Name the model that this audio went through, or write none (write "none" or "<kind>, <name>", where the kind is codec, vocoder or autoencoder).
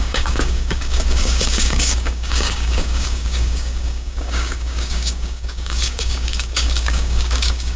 codec, DAC